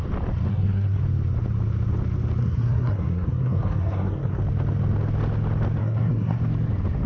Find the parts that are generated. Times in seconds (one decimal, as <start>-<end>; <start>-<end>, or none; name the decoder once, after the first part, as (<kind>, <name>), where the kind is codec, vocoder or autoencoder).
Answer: 0.5-1.0 (codec, SNAC); 2.4-4.4; 5.8-6.4